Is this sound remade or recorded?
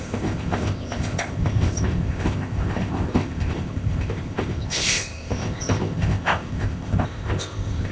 remade